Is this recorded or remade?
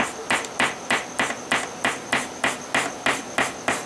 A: recorded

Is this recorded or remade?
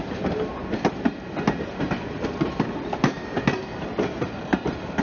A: recorded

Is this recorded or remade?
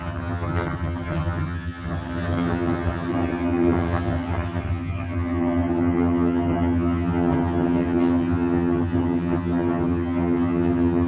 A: remade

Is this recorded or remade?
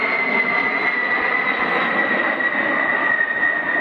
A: recorded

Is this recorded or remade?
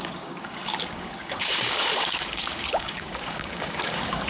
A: remade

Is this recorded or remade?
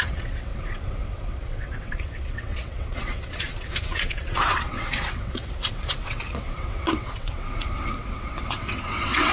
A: remade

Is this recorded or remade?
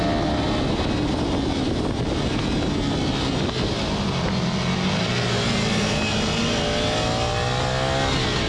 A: recorded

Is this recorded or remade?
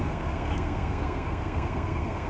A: remade